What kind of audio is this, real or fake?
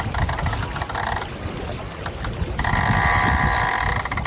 real